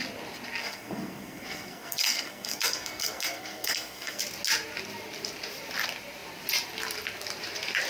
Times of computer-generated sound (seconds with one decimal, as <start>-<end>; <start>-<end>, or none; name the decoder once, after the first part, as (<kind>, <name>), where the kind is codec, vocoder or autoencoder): 0.6-4.2 (codec, SNAC)